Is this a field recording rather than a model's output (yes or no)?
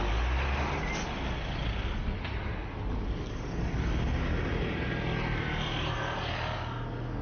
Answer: yes